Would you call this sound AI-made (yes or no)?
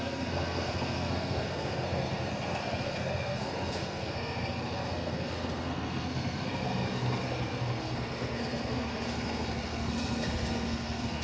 yes